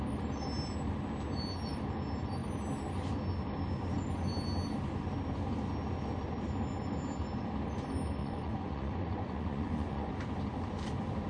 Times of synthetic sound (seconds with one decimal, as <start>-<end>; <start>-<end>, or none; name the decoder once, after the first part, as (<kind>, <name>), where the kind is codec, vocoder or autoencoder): 8.2-10.1 (vocoder, Vocos)